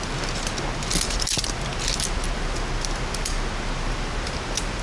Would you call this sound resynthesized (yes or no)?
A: no